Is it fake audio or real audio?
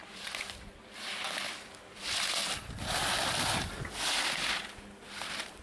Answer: real